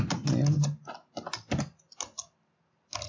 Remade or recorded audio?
recorded